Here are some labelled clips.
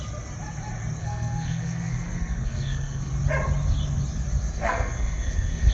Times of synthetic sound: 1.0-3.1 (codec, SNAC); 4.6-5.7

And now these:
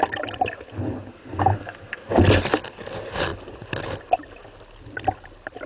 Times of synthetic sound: 1.1-2.1 (codec, SNAC)

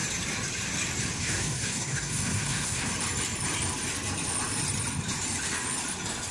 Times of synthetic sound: 1.2-2.9 (codec, SNAC)

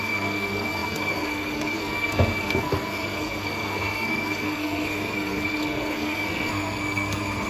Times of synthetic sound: 0.0-7.5 (codec, SNAC)

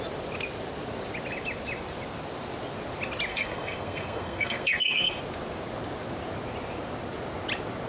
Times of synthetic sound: 3.3-5.2 (codec, SNAC)

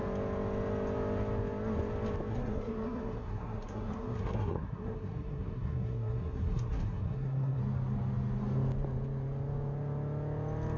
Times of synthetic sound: 2.3-7.6 (codec, SNAC)